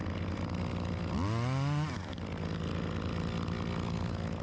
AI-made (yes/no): no